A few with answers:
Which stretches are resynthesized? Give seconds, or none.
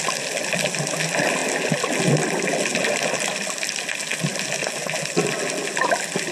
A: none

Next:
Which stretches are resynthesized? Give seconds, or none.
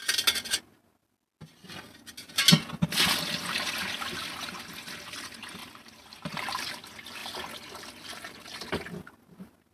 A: 5.6-6.7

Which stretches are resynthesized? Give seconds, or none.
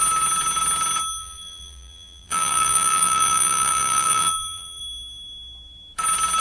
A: 1.2-4.8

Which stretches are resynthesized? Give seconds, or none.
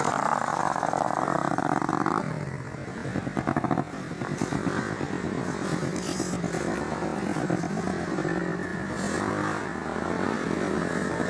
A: 0.0-8.7; 9.2-11.3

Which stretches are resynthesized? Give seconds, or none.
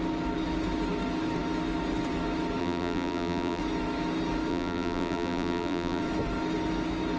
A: 2.6-3.6; 4.5-6.0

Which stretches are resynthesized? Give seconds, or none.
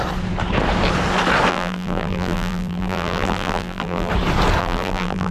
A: 1.5-4.1; 4.6-5.3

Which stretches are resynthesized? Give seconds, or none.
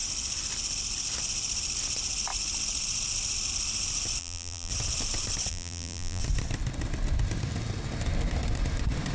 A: 4.2-4.7; 5.5-6.2